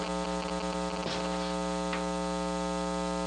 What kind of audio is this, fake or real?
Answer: real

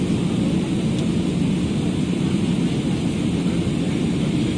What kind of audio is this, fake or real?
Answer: real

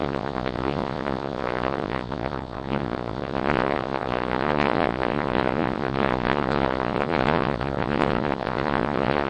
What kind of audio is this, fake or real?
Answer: fake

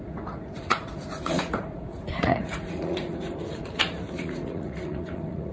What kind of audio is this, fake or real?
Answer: fake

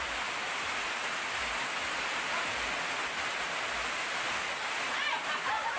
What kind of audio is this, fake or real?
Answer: real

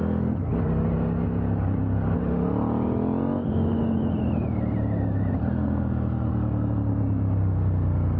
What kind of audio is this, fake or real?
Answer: real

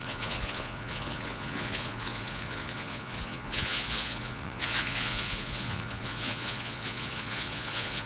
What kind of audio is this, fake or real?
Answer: fake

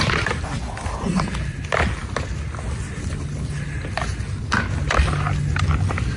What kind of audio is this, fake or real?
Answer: real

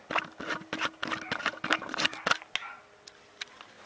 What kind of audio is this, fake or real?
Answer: real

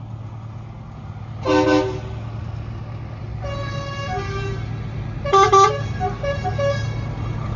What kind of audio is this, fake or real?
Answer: real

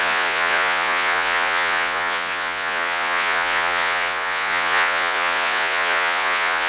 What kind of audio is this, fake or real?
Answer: fake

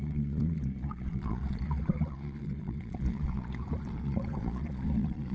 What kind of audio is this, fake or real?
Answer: fake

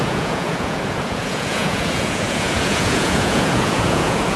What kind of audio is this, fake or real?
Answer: fake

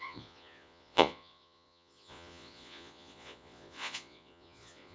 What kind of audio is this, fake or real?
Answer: fake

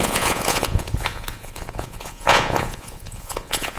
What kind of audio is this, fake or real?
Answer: fake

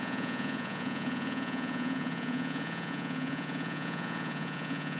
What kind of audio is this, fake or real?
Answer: fake